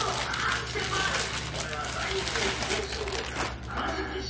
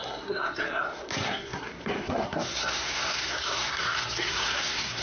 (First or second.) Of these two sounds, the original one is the first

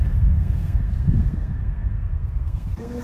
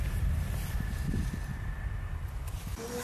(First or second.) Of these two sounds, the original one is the second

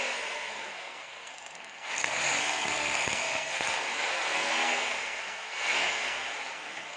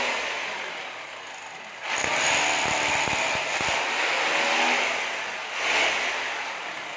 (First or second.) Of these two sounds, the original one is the second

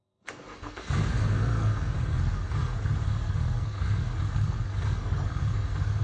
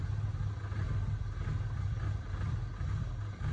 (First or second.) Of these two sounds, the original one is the second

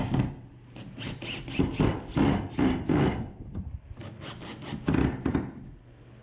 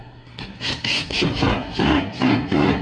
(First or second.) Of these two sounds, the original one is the first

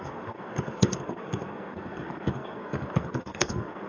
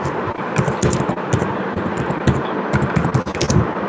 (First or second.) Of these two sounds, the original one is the second